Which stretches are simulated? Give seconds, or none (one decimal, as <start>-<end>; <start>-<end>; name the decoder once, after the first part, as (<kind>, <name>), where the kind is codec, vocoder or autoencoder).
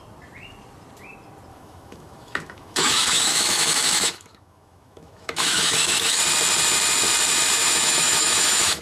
1.5-6.2 (autoencoder, DAC-VAE); 7.6-8.8